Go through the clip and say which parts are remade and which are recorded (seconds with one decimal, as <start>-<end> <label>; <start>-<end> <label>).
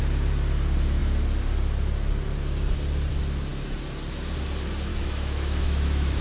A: 0.0-4.9 recorded; 4.9-6.2 remade